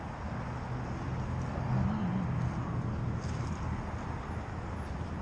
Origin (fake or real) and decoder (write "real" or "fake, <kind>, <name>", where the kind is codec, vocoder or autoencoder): real